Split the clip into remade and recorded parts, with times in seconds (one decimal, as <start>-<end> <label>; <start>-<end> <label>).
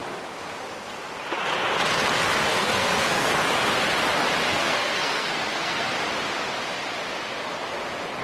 0.0-2.5 recorded; 2.5-3.3 remade; 3.3-4.5 recorded; 4.5-5.9 remade; 5.9-8.2 recorded